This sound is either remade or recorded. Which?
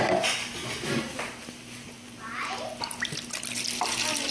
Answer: recorded